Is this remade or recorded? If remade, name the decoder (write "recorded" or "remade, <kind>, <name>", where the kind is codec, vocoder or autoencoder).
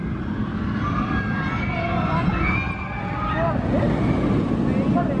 recorded